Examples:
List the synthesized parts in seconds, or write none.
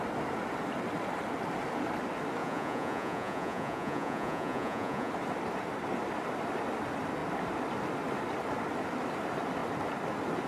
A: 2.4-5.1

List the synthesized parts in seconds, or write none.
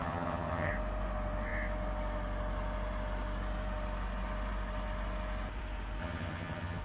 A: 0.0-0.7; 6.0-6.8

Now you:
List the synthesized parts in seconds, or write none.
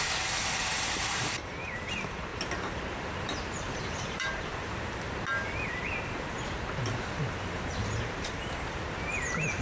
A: 0.0-2.3; 3.1-4.5; 7.8-9.6